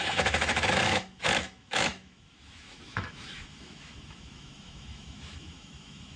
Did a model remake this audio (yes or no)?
yes